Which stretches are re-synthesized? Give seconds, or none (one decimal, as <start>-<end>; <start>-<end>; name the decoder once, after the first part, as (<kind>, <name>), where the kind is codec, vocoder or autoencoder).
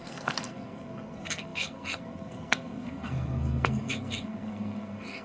0.0-5.2 (codec, SNAC)